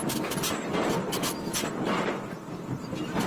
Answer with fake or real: real